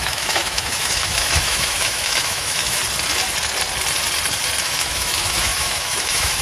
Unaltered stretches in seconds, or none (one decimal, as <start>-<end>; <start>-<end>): 2.8-4.6